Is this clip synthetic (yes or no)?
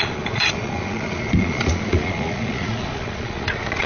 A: yes